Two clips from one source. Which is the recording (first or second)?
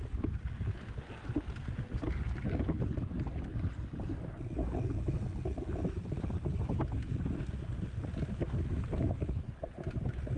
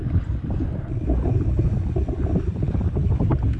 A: first